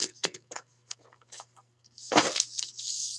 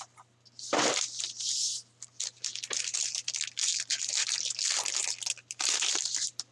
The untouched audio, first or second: second